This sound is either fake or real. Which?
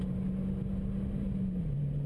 real